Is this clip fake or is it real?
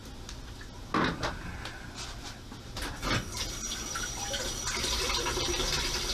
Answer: real